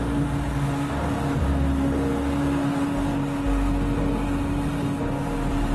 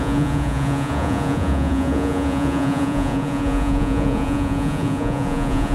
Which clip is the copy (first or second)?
second